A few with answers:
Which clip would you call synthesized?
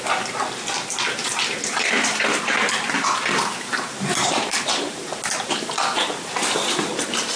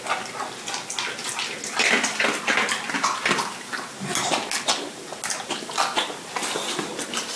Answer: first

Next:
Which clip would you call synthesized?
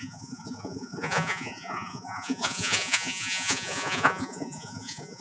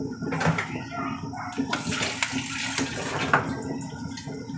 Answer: first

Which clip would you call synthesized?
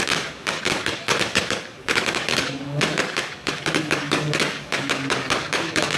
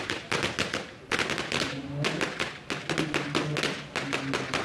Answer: first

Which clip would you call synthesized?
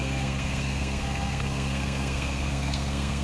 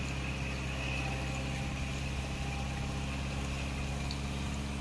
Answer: first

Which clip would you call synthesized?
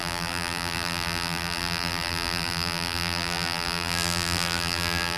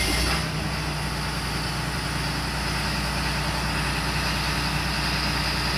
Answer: first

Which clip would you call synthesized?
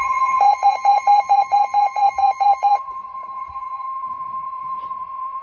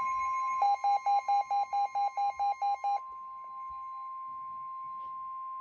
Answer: first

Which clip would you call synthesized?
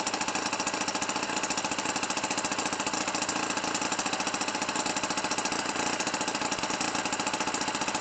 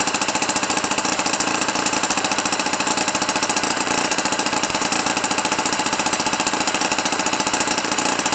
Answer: second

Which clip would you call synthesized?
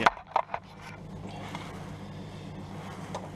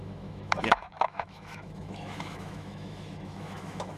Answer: second